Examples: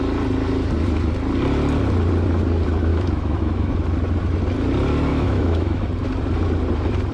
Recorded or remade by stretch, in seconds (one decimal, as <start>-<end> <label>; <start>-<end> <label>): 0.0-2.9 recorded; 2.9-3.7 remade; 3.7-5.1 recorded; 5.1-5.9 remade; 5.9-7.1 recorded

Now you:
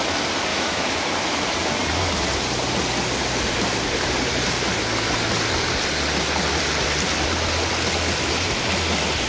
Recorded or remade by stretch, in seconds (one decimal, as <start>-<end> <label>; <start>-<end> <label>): 0.0-0.5 recorded; 0.5-1.1 remade; 1.1-9.3 recorded

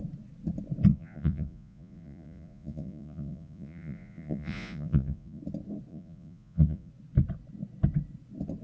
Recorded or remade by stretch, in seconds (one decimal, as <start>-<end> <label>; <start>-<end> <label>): 0.0-0.9 recorded; 0.9-5.4 remade; 5.4-5.9 recorded; 5.9-6.9 remade; 6.9-8.6 recorded

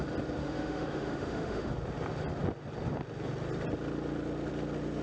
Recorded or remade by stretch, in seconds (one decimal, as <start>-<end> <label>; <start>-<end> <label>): 0.0-0.4 recorded; 0.4-1.7 remade; 1.7-5.0 recorded

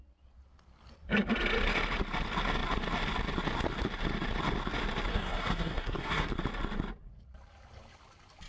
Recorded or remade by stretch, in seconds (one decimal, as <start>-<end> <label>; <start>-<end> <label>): 0.0-5.1 recorded; 5.1-6.3 remade; 6.3-8.5 recorded

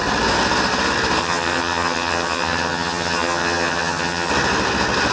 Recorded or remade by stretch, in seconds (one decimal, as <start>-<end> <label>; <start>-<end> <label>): 0.0-1.2 recorded; 1.2-4.3 remade; 4.3-5.1 recorded